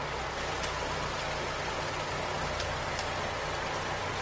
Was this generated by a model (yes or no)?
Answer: no